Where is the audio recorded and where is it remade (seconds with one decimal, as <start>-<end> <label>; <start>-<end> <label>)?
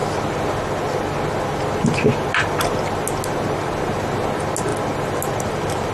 0.0-5.9 recorded